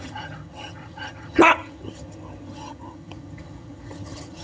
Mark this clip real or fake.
fake